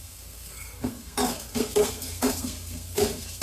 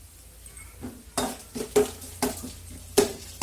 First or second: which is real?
second